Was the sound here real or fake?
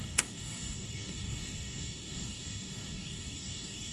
fake